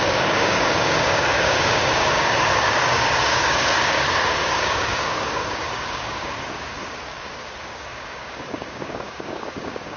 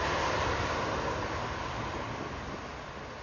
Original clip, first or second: second